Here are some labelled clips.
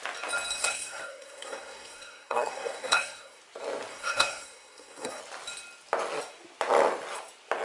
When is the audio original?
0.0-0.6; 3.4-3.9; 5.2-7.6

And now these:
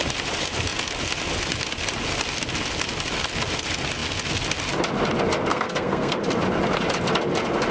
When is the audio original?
0.0-5.5; 6.2-7.7

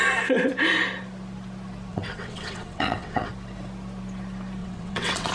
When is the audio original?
0.0-1.9; 3.3-4.6

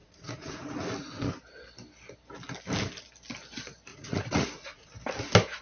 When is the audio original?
0.7-3.9; 4.9-5.6